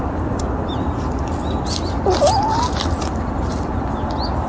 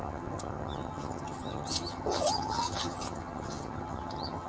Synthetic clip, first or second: second